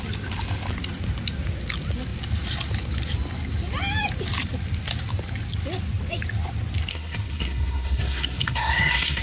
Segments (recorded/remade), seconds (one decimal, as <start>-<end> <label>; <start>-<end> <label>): 0.0-6.9 recorded; 6.9-9.2 remade